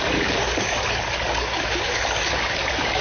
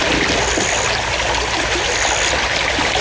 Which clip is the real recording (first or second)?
second